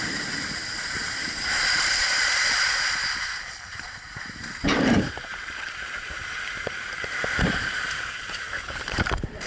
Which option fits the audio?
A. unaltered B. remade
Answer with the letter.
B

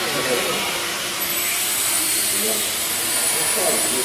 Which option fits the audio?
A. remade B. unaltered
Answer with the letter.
A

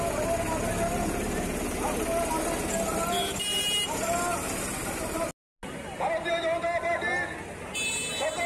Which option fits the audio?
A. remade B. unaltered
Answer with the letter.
B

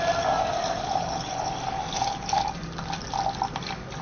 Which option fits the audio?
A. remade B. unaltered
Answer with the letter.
B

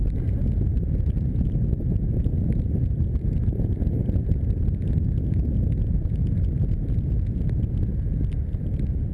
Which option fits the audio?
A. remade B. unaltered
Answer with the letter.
B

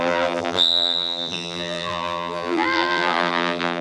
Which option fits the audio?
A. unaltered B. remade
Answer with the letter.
B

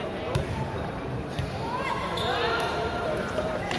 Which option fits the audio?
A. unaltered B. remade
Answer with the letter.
B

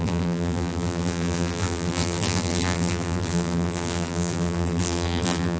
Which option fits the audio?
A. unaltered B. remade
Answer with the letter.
B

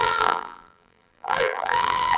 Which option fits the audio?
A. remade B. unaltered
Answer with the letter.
A